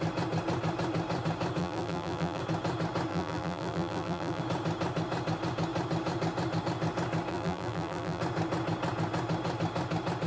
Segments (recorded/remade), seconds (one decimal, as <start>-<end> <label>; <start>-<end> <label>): 0.0-1.6 recorded; 1.6-2.4 remade; 2.4-3.1 recorded; 3.1-4.4 remade; 4.4-7.3 recorded; 7.3-8.2 remade; 8.2-10.3 recorded